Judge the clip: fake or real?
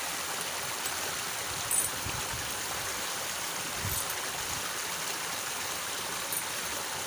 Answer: real